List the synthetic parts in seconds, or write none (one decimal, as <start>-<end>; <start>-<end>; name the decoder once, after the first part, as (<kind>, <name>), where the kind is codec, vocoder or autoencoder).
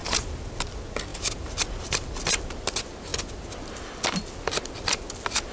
1.1-2.5 (vocoder, BigVGAN v2)